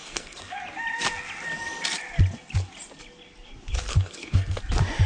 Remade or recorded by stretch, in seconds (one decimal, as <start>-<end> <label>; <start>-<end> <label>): 0.0-0.6 remade; 0.6-3.9 recorded; 3.9-4.6 remade; 4.6-5.1 recorded